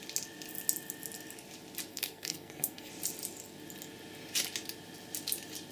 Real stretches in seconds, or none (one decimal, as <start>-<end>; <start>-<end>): 0.0-1.9; 2.9-5.7